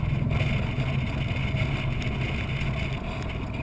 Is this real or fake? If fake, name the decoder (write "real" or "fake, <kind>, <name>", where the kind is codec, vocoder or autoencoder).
real